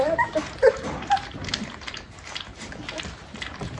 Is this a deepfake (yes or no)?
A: no